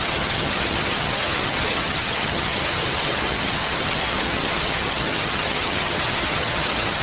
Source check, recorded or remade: remade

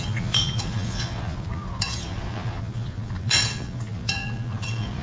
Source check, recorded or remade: remade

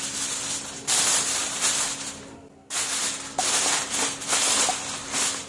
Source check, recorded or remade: remade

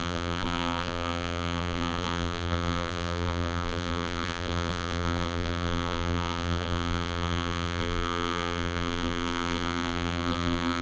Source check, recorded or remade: remade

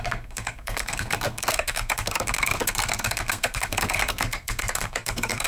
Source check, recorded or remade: remade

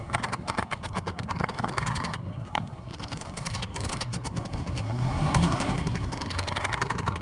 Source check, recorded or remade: remade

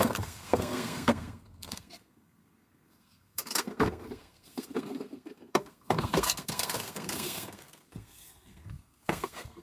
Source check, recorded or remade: remade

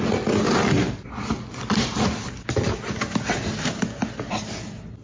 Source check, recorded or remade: recorded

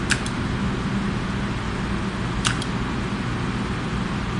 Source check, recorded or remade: recorded